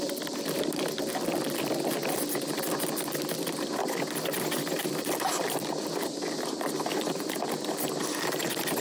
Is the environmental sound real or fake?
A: fake